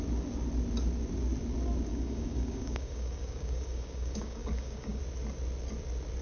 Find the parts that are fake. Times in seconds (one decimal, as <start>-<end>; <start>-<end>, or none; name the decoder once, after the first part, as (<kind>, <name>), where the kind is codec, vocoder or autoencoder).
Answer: 1.9-5.0 (codec, DAC)

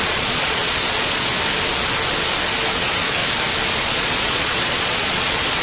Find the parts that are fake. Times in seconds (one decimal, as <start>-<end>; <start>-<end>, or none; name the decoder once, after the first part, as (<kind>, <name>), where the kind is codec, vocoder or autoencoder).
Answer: 0.0-1.3 (vocoder, Vocos); 2.7-3.2; 3.8-5.6

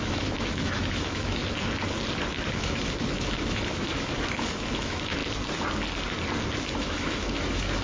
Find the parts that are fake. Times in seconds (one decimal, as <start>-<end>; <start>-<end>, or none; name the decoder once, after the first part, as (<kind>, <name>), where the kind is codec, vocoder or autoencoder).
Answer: 0.0-1.4 (autoencoder, DAC-VAE); 2.3-5.2; 6.6-7.8